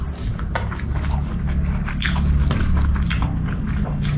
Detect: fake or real real